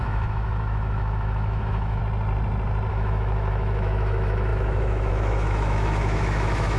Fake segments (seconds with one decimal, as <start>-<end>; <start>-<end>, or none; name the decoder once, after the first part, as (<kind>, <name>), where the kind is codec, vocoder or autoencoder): 0.0-2.0 (autoencoder, DAC-VAE); 2.9-6.8